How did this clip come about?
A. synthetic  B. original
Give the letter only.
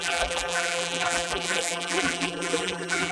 A